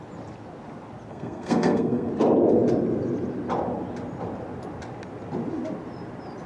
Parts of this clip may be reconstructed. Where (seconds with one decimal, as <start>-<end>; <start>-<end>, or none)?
1.1-2.1